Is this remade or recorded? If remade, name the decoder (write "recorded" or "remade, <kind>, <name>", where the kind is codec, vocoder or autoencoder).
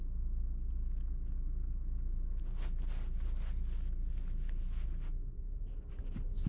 recorded